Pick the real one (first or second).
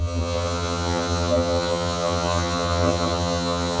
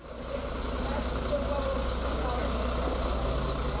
second